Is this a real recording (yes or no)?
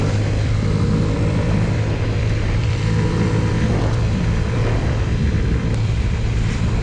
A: no